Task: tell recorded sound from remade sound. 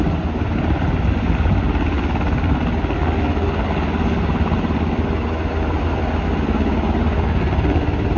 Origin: recorded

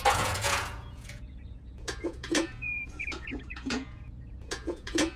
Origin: remade